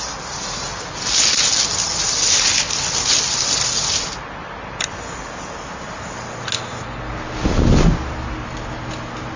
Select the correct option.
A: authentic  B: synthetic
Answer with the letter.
A